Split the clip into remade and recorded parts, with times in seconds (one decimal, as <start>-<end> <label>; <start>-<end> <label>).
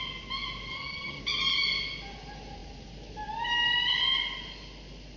0.0-0.7 recorded; 0.7-1.2 remade; 1.2-5.2 recorded